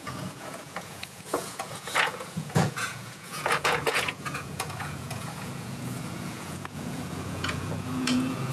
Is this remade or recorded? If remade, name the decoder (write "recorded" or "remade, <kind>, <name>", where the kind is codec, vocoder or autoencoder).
remade, vocoder, Vocos